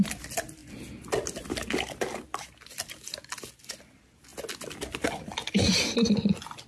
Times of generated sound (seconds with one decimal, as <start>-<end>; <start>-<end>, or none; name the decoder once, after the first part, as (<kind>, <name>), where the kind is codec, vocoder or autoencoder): none